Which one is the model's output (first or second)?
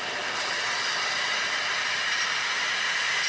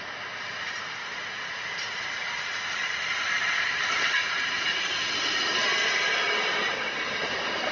second